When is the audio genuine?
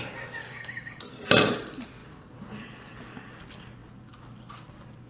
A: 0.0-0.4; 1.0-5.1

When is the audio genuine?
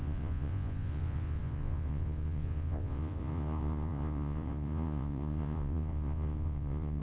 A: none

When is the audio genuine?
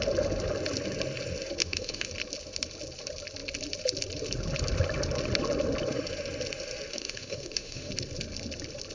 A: 0.0-1.6; 2.1-6.9; 7.9-8.9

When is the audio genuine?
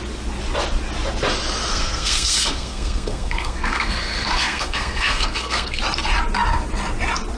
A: 0.0-1.7; 5.8-7.4